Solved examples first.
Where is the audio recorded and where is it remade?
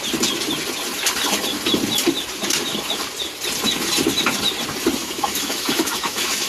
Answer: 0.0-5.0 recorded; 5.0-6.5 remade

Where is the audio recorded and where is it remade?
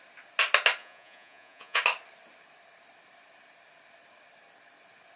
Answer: 0.0-0.8 recorded; 0.8-1.8 remade; 1.8-5.2 recorded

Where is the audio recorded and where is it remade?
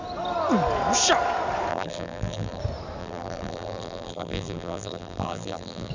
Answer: 0.0-1.7 recorded; 1.7-2.6 remade; 2.6-3.0 recorded; 3.0-5.9 remade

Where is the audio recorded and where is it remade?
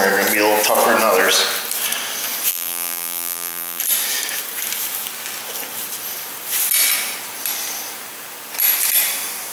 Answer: 0.0-2.5 recorded; 2.5-3.8 remade; 3.8-9.5 recorded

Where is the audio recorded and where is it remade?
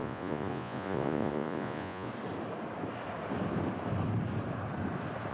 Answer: 0.0-2.1 remade; 2.1-5.3 recorded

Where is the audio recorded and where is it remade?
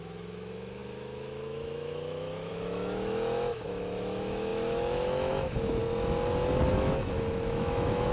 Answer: 0.0-5.8 remade; 5.8-6.7 recorded; 6.7-8.1 remade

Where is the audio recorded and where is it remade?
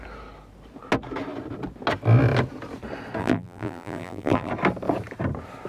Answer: 0.0-3.2 recorded; 3.2-4.5 remade; 4.5-5.7 recorded